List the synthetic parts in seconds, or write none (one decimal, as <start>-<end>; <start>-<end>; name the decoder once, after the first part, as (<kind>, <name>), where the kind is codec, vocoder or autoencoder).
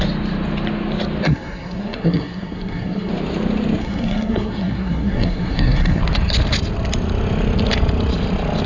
1.3-3.1 (codec, SNAC); 3.8-6.0